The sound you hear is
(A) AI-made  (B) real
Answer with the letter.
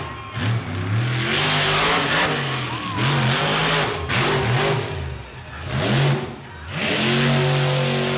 B